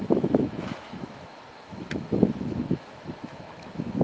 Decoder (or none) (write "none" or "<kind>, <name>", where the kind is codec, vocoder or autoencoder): autoencoder, DAC-VAE